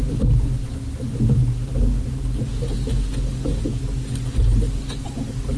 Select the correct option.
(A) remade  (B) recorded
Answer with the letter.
B